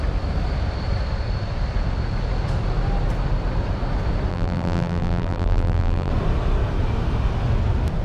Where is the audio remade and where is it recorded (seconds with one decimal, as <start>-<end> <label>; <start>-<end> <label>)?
0.0-4.3 recorded; 4.3-6.1 remade; 6.1-8.0 recorded